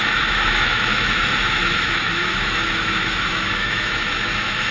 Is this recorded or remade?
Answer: remade